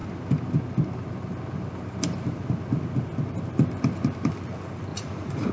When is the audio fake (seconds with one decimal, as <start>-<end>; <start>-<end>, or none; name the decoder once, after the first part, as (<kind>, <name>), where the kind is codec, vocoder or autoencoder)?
4.9-5.5 (vocoder, Vocos)